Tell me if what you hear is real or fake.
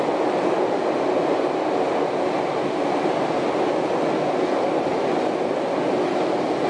real